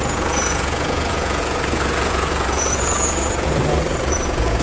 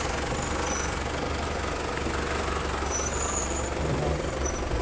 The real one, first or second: second